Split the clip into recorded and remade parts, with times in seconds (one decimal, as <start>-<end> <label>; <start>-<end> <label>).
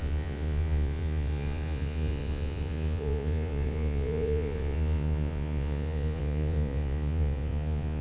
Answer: 0.0-8.0 remade